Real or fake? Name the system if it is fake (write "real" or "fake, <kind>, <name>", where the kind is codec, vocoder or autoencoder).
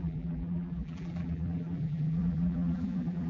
fake, vocoder, BigVGAN v2